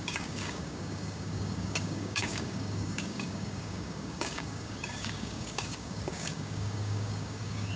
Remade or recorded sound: remade